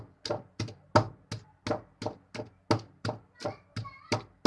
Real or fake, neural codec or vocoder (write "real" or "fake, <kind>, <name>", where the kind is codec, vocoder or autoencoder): real